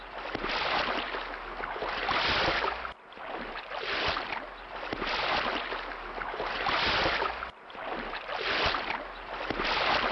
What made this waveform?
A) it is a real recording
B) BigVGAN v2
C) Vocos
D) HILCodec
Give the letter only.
A